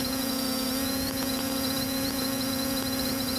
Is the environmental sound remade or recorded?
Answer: remade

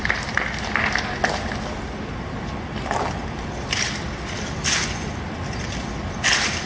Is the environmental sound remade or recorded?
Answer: recorded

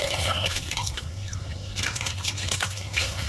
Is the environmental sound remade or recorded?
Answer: remade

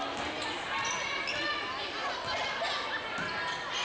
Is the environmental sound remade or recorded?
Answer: recorded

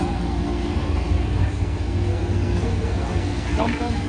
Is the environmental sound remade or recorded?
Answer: remade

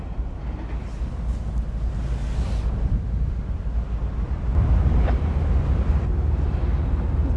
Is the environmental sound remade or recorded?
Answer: recorded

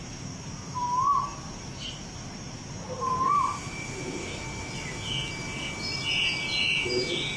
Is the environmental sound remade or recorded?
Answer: recorded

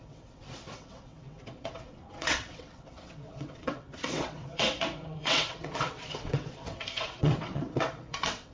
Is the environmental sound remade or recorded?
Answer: remade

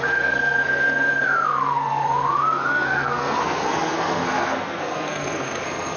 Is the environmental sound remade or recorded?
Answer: remade